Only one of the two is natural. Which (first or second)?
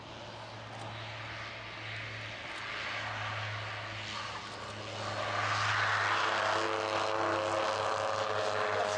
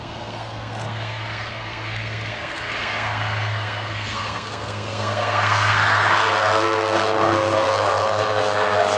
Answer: first